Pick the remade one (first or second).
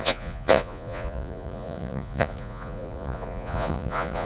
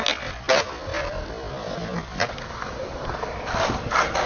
first